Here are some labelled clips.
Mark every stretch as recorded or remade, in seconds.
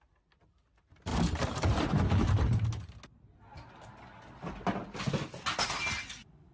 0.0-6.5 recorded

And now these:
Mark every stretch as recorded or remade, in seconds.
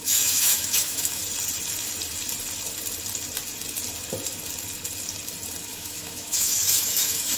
0.0-1.2 remade; 1.2-5.6 recorded; 5.6-7.4 remade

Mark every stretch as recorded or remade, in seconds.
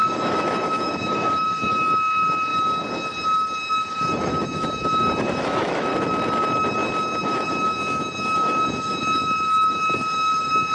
0.0-2.5 remade; 2.5-3.7 recorded; 3.7-5.9 remade; 5.9-7.2 recorded; 7.2-10.7 remade